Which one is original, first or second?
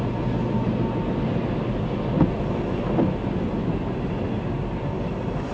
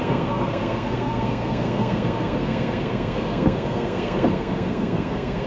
first